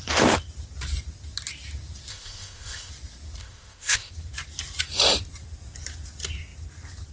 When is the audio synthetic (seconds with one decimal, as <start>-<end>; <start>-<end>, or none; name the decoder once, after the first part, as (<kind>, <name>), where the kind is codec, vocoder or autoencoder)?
2.1-2.9 (codec, ZipCodec); 3.4-4.1